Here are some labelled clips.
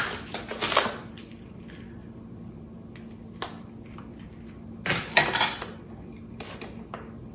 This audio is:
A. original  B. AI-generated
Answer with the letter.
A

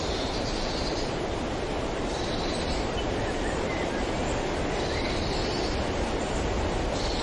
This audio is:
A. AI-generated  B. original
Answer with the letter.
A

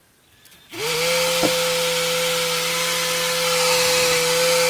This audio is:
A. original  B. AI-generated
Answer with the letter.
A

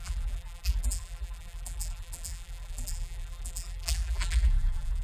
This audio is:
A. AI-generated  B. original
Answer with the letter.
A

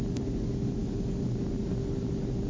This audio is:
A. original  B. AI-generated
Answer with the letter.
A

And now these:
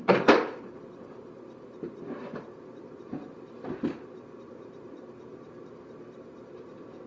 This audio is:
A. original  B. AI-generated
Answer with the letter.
B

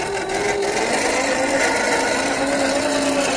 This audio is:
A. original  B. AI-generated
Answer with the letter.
A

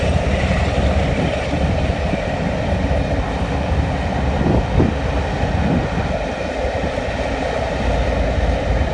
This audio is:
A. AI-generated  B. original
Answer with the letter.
A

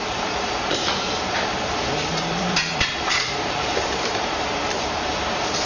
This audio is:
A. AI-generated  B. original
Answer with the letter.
A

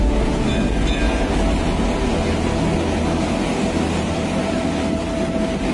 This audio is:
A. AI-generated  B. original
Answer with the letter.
B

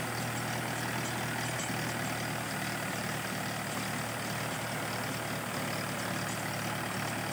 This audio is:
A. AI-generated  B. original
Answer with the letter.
B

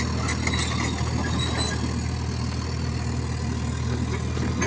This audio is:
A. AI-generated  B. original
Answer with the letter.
B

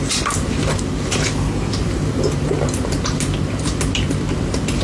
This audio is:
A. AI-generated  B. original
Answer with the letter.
A